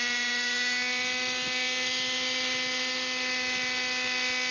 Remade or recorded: recorded